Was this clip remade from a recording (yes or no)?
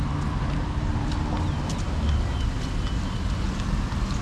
no